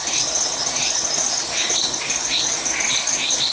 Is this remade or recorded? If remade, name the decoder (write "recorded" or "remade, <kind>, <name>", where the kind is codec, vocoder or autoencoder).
recorded